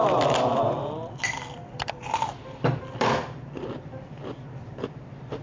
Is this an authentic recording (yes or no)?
no